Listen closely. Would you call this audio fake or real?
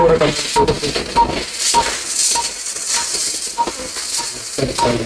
real